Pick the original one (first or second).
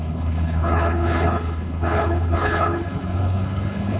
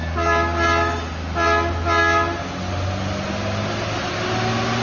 second